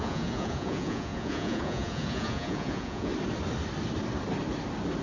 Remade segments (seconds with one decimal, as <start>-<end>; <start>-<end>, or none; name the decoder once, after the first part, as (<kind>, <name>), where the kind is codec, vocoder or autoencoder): 0.0-3.1 (vocoder, Vocos)